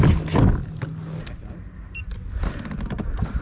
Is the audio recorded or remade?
recorded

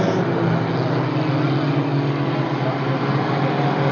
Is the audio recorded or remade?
recorded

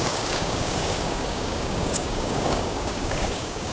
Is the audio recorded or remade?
remade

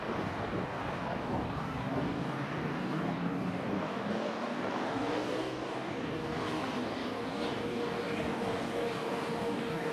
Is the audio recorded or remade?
remade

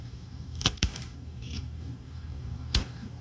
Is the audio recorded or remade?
remade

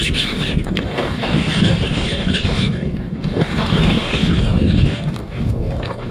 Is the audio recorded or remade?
remade